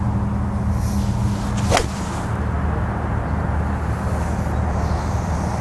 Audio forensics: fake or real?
real